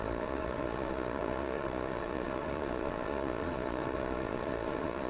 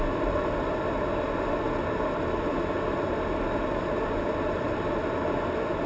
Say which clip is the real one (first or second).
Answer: second